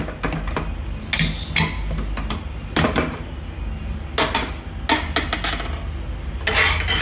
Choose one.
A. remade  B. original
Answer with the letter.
B